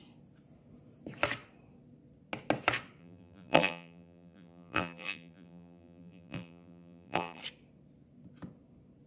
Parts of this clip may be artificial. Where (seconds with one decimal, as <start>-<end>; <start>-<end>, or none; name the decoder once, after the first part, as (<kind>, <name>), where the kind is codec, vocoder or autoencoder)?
3.0-7.4 (vocoder, BigVGAN v2)

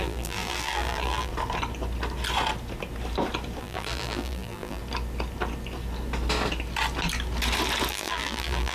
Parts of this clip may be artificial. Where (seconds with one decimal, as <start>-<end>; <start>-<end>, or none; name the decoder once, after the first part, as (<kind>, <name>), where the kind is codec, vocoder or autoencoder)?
0.0-1.3 (vocoder, BigVGAN v2); 3.6-4.8; 7.9-8.7

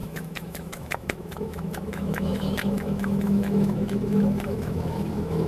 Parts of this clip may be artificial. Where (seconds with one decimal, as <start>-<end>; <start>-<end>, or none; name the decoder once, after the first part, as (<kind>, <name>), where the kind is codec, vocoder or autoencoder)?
0.0-5.5 (autoencoder, DAC-VAE)